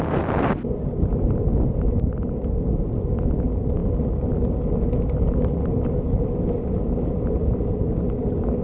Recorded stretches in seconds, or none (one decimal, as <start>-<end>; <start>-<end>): 0.0-8.6